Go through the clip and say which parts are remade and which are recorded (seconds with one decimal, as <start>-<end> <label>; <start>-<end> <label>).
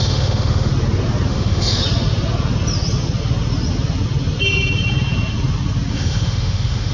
0.0-0.7 remade; 0.7-1.3 recorded; 1.3-1.8 remade; 1.8-5.9 recorded; 5.9-6.9 remade